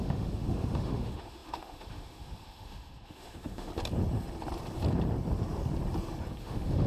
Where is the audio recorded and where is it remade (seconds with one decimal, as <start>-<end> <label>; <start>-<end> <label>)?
0.0-3.7 remade; 3.7-6.4 recorded; 6.4-6.9 remade

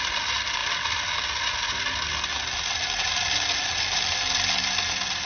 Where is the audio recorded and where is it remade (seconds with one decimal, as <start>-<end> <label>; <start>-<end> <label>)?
0.0-5.3 recorded